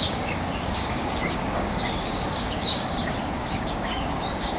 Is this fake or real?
fake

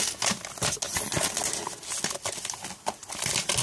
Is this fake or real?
real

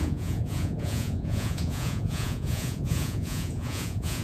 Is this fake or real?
fake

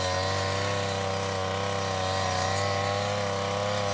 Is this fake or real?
real